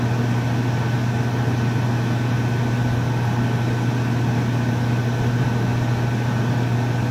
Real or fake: real